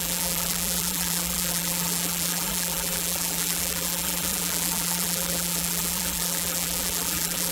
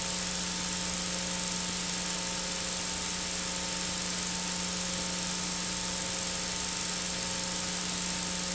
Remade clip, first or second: first